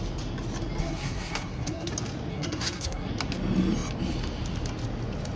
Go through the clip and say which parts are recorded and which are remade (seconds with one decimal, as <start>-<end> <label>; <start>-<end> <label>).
0.0-0.8 recorded; 0.8-1.9 remade; 1.9-2.3 recorded; 2.3-3.1 remade; 3.1-5.4 recorded